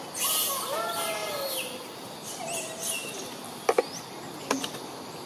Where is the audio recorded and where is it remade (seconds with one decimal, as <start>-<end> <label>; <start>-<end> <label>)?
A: 0.0-5.3 recorded